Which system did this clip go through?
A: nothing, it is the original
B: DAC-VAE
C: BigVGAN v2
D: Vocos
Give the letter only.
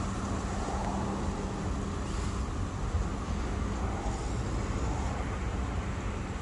A